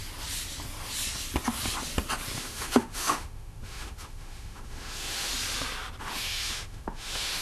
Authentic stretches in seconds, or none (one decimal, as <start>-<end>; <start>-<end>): 0.0-2.4; 5.3-6.0